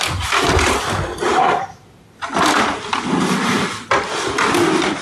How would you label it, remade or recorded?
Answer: recorded